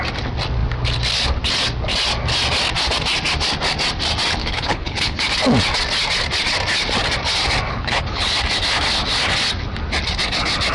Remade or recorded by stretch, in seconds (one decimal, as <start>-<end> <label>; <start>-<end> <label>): 0.0-4.4 recorded; 4.4-5.2 remade; 5.2-7.7 recorded; 7.7-8.3 remade; 8.3-10.7 recorded